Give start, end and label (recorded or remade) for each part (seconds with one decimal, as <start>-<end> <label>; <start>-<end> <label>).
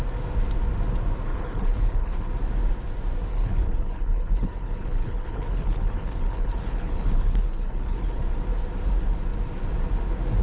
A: 0.0-1.3 recorded; 1.3-2.3 remade; 2.3-3.3 recorded; 3.3-8.2 remade; 8.2-10.4 recorded